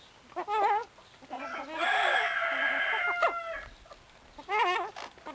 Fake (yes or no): no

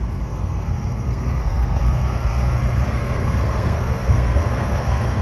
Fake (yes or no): yes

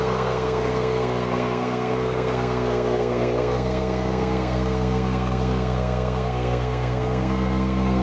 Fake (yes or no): yes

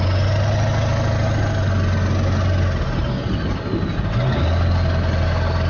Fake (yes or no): no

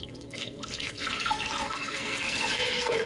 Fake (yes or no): yes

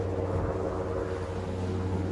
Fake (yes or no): no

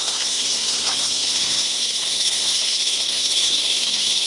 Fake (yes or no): yes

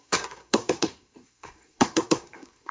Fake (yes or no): yes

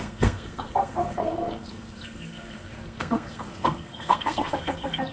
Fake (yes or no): yes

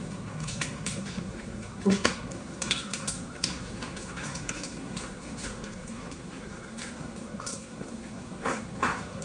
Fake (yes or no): yes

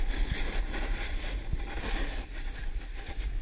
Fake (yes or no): no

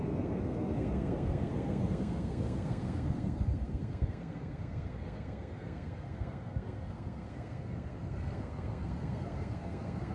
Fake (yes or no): yes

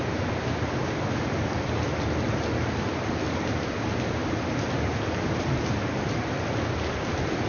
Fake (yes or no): no